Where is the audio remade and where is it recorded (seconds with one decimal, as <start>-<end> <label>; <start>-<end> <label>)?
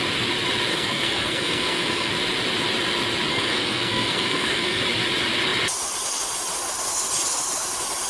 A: 0.0-0.7 recorded; 0.7-2.1 remade; 2.1-3.3 recorded; 3.3-4.8 remade; 4.8-8.1 recorded